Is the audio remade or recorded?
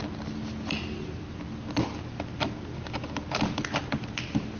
recorded